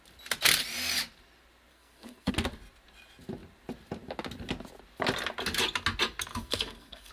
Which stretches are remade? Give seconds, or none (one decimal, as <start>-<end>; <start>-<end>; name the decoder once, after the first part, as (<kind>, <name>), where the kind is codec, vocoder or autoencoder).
1.7-2.3 (codec, SNAC); 6.3-7.1